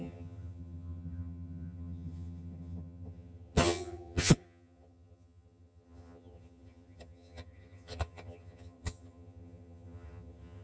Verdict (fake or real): fake